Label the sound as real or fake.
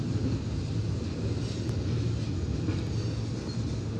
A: real